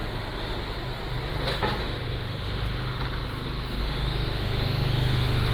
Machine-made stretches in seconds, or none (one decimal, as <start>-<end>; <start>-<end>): 1.8-3.0; 3.8-5.5